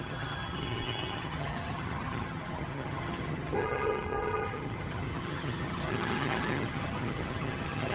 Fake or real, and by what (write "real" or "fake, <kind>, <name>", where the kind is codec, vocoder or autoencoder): fake, vocoder, HiFi-GAN